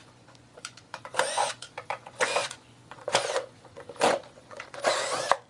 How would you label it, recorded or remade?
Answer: remade